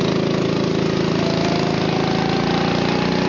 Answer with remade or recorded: recorded